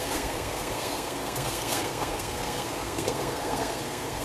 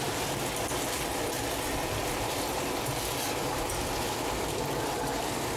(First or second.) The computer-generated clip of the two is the first